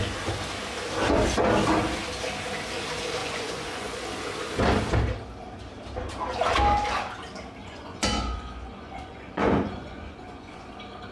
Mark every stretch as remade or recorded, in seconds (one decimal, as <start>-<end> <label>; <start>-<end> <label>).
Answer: 0.0-3.2 recorded; 3.2-4.0 remade; 4.0-7.6 recorded; 7.6-10.7 remade; 10.7-11.1 recorded